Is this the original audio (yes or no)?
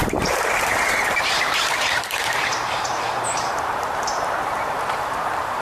no